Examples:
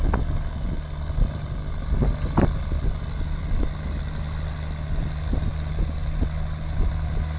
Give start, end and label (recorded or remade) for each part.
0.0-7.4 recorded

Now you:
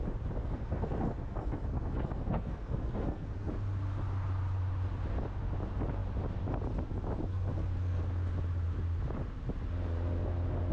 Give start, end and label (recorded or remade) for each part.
0.0-0.4 recorded; 0.4-3.5 remade; 3.5-7.3 recorded; 7.3-8.0 remade; 8.0-10.7 recorded

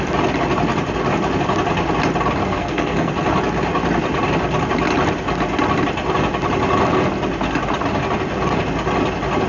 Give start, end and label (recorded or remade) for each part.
0.0-2.5 recorded; 2.5-3.1 remade; 3.1-9.5 recorded

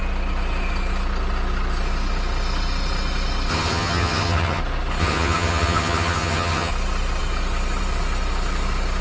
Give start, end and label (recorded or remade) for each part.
0.0-3.5 recorded; 3.5-4.6 remade; 4.6-5.0 recorded; 5.0-6.7 remade; 6.7-9.0 recorded

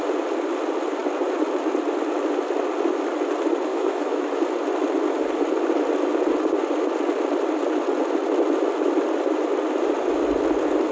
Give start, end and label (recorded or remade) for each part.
0.0-3.7 recorded; 3.7-4.3 remade; 4.3-10.9 recorded

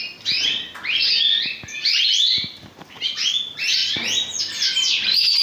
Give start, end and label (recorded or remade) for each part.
0.0-5.4 recorded

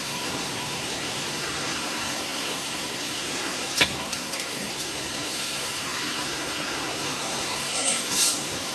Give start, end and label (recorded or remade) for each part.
0.0-8.7 remade

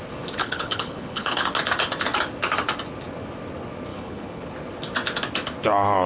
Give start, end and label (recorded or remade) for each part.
0.0-0.4 recorded; 0.4-1.5 remade; 1.5-3.9 recorded; 3.9-4.5 remade; 4.5-6.1 recorded